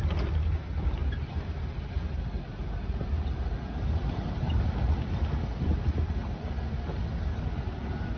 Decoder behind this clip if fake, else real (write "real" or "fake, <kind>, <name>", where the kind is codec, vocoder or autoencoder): real